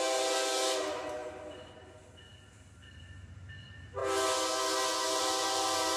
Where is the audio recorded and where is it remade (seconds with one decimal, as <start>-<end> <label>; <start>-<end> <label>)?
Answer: 0.0-4.0 remade; 4.0-5.2 recorded; 5.2-6.0 remade